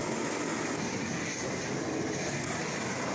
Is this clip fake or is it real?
real